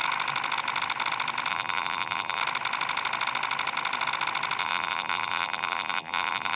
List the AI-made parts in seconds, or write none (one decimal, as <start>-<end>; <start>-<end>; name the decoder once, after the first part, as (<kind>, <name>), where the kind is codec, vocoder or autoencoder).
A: 1.5-2.4 (vocoder, BigVGAN v2); 4.6-6.6